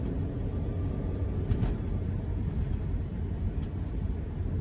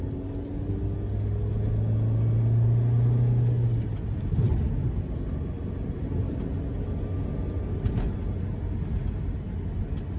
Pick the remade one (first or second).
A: first